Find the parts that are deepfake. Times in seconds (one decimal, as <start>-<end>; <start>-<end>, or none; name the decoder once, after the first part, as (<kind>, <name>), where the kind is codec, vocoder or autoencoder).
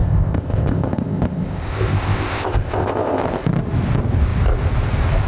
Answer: 0.0-3.2 (codec, ZipCodec)